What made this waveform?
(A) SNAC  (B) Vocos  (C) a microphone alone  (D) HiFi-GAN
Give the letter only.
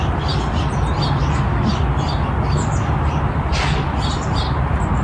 C